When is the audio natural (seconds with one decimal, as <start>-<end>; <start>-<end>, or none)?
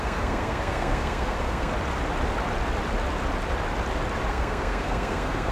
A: 1.7-4.3